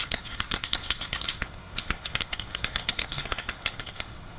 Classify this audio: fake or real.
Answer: fake